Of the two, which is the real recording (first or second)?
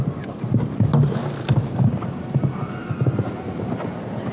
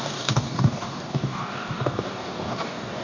first